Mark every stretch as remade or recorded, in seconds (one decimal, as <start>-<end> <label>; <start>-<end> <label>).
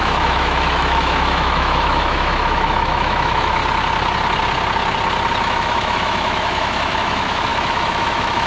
0.0-3.6 remade; 3.6-5.4 recorded; 5.4-8.5 remade